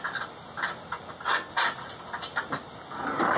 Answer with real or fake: real